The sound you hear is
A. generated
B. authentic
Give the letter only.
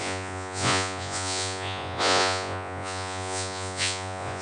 A